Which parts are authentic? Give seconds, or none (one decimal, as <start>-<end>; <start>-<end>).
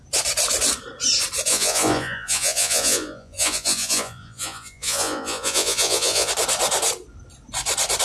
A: 0.0-1.5; 6.3-8.0